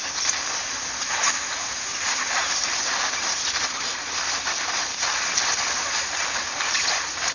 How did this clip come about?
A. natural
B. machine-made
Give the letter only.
A